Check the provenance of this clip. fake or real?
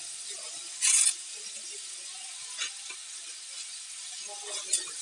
real